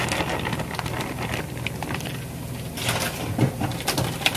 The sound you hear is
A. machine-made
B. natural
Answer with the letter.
B